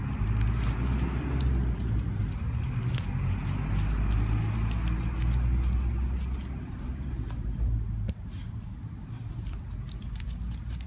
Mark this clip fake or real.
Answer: real